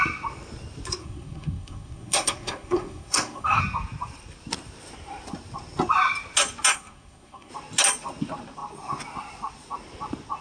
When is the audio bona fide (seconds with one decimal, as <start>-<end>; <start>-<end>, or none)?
0.0-1.0; 3.6-6.7; 7.5-10.4